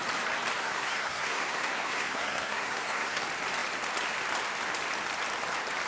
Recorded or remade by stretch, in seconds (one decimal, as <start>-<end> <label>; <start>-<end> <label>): 0.0-0.6 recorded; 0.6-3.2 remade; 3.2-5.9 recorded